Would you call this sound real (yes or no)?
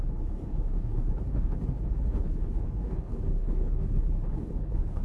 no